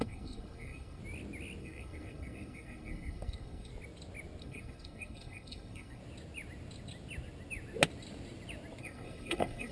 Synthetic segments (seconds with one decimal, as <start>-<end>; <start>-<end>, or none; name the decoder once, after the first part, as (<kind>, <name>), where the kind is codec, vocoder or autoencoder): 0.0-1.0 (codec, SNAC); 1.6-3.7; 4.4-6.0; 8.8-9.7